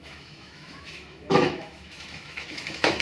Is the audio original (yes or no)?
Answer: no